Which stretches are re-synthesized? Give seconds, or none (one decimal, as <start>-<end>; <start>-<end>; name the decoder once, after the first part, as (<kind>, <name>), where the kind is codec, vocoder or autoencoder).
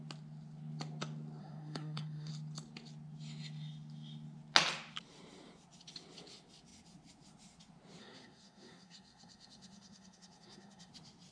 1.4-2.3 (codec, SNAC); 8.0-10.9